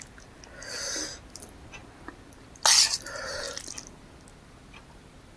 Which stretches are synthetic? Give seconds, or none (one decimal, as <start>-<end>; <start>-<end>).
none